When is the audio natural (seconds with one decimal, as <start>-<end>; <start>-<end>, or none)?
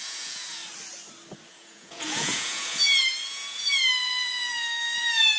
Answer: 0.6-1.5